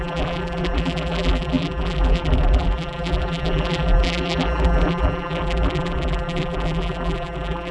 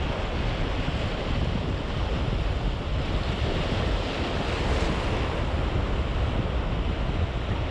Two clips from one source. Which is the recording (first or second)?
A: second